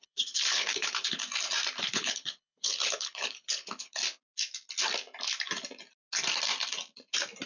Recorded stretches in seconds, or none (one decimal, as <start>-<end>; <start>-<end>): 1.2-1.8; 4.0-7.5